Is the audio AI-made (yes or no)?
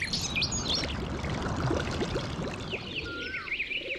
no